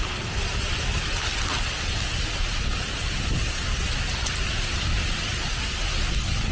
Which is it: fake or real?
real